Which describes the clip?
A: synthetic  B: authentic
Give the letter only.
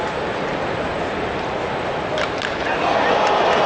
B